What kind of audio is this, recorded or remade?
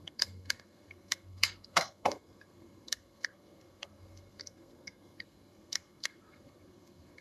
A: remade